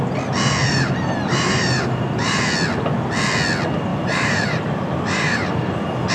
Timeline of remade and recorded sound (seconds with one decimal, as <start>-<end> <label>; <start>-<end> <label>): 0.0-0.7 recorded; 0.7-2.4 remade; 2.4-3.9 recorded; 3.9-6.1 remade